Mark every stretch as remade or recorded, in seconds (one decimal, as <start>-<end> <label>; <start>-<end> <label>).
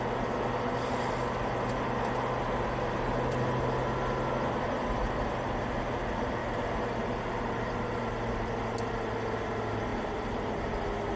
0.0-6.4 recorded; 6.4-8.0 remade; 8.0-9.9 recorded; 9.9-10.7 remade; 10.7-11.2 recorded